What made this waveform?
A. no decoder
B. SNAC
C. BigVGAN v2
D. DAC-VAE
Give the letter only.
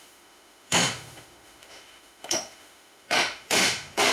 D